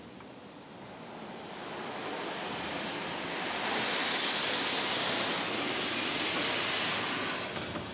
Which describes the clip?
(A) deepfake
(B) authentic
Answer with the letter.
B